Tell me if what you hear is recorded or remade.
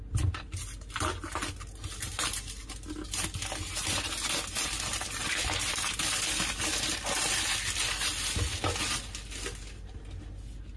recorded